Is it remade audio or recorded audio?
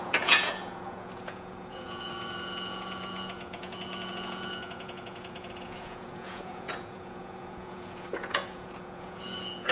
remade